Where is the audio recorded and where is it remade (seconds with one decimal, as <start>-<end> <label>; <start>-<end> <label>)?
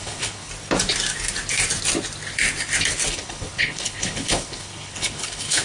0.0-0.5 remade; 0.5-3.1 recorded; 3.1-5.6 remade